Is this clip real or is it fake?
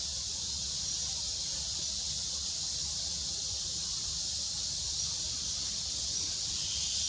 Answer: real